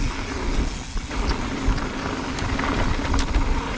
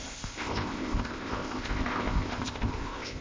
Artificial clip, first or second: second